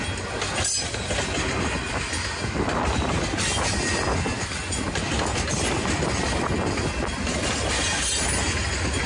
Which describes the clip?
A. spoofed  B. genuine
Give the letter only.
B